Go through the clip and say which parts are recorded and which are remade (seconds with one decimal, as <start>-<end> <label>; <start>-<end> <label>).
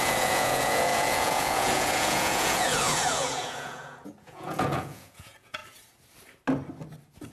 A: 0.0-5.6 remade; 5.6-7.3 recorded